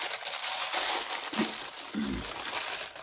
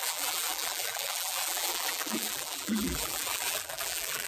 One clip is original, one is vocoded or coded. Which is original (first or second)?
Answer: first